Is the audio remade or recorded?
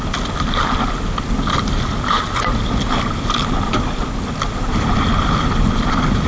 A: recorded